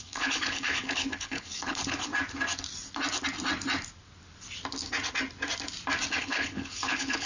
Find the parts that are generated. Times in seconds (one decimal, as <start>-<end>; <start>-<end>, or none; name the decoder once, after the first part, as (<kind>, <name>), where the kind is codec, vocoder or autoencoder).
0.0-2.1 (codec, HILCodec); 6.2-7.3